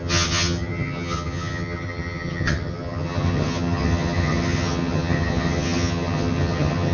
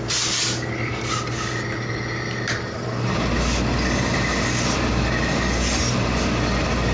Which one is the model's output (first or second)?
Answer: first